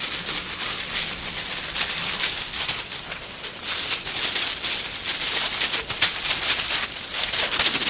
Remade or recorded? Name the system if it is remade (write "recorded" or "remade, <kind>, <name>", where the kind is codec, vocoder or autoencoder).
recorded